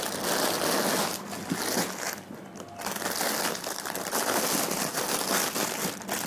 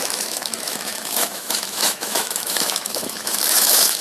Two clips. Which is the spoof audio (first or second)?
second